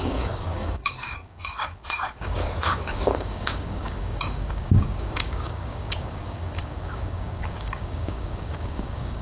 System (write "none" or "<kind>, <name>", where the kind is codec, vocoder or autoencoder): codec, DAC